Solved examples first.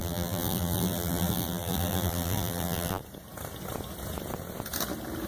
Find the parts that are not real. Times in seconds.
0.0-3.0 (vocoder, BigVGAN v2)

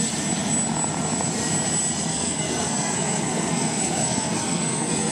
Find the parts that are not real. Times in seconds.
2.1-5.1 (codec, SNAC)